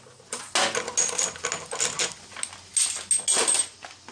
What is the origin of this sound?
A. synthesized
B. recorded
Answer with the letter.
B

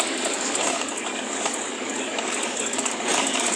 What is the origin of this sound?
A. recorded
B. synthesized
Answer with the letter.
B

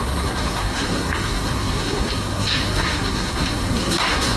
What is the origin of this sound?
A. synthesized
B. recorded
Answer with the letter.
A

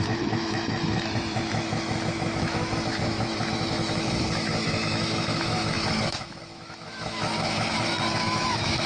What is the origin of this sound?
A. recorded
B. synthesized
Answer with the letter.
B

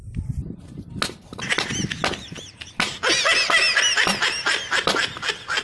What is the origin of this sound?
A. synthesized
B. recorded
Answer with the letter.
B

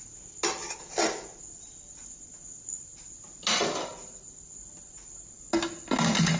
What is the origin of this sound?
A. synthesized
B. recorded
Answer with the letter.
B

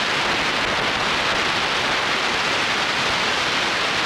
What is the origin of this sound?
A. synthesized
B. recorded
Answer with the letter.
B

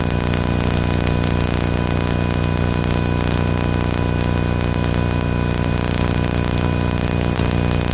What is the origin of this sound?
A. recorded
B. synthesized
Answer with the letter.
A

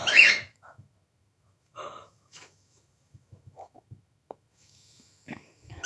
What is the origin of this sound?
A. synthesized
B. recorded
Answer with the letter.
A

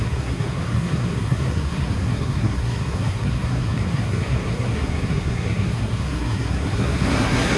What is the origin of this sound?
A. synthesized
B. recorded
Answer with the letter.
A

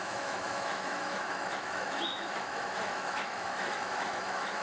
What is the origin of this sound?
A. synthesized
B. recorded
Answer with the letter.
A